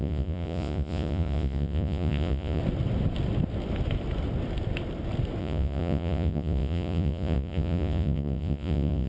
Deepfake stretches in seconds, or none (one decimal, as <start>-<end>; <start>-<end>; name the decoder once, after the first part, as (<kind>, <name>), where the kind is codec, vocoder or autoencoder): 0.0-2.6 (vocoder, Vocos); 5.4-9.1